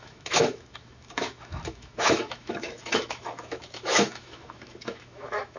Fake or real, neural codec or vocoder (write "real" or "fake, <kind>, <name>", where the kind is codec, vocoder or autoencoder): fake, autoencoder, DAC-VAE